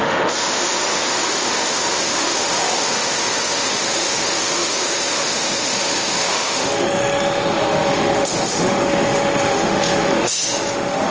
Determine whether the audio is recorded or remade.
remade